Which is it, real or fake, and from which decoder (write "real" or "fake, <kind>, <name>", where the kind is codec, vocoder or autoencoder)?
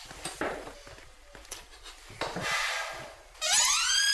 real